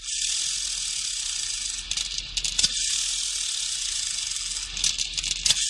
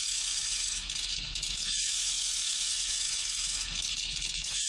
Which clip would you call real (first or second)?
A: first